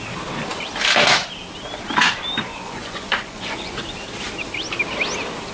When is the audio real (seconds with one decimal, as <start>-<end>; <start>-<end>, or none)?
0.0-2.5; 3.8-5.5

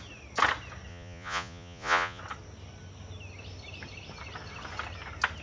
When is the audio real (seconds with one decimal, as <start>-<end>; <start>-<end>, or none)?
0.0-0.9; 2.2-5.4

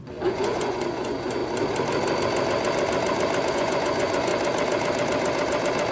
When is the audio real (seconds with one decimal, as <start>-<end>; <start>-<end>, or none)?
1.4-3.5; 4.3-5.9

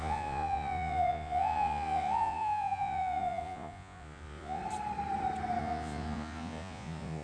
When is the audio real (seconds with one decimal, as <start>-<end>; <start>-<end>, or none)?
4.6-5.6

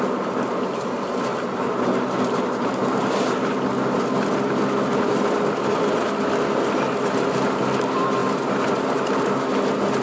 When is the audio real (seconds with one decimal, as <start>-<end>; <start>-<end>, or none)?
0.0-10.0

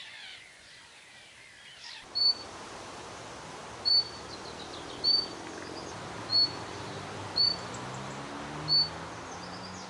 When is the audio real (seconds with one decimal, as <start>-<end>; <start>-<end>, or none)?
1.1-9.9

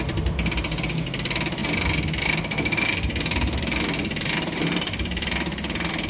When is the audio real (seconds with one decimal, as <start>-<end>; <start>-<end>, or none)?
0.0-6.1

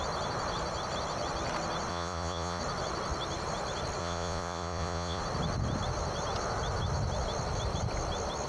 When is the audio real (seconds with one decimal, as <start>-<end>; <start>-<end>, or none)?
0.0-1.9; 2.6-4.0; 5.2-8.5